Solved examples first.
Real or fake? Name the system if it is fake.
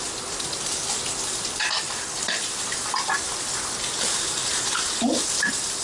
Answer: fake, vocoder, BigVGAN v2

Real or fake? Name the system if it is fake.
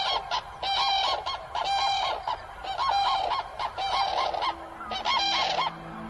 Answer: real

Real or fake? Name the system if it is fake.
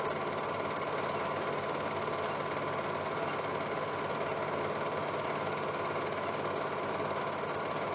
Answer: real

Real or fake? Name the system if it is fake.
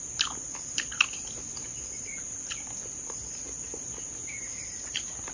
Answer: real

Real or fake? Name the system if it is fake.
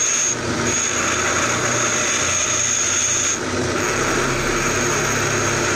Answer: real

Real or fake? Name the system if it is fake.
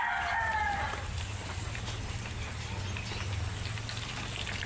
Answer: real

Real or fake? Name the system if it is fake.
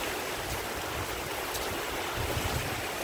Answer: real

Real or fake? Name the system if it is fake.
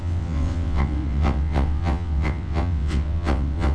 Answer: fake, vocoder, WaveNeXt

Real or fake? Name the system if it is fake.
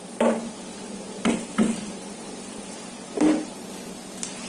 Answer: real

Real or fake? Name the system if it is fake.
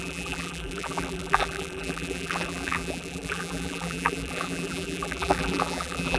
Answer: fake, vocoder, BigVGAN v2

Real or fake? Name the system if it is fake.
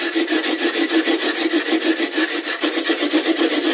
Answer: real